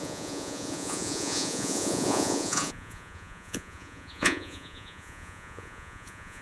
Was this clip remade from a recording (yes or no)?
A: yes